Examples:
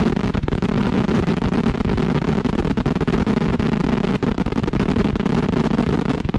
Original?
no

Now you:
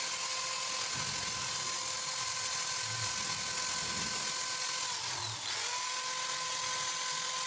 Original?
yes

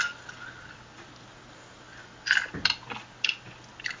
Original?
yes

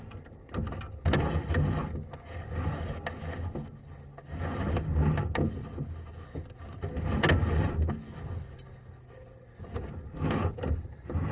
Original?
yes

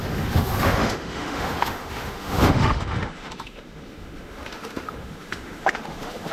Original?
no